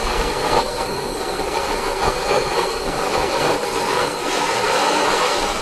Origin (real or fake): fake